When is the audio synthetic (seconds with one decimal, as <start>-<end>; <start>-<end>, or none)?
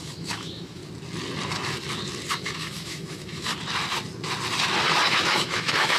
0.0-0.8; 2.3-3.5; 5.1-6.0